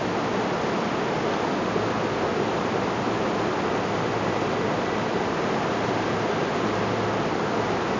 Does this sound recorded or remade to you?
recorded